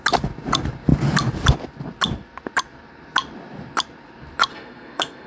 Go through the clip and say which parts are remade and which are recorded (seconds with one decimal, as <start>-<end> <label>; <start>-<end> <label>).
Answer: 0.0-4.5 recorded; 4.5-5.3 remade